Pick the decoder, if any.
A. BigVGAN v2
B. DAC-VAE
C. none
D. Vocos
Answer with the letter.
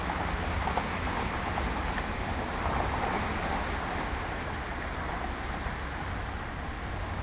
C